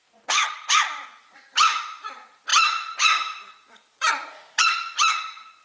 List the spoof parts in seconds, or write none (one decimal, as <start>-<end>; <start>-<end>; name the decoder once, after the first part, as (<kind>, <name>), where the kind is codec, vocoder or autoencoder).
0.0-5.6 (vocoder, Vocos)